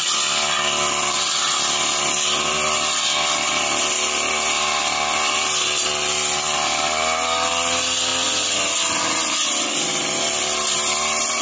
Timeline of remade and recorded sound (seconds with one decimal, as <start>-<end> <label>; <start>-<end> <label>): 0.0-11.4 recorded